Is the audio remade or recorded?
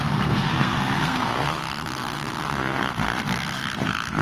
remade